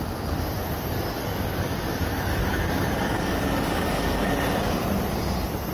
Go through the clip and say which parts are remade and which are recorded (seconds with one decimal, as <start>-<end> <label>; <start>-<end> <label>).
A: 0.0-1.2 recorded; 1.2-4.3 remade; 4.3-5.7 recorded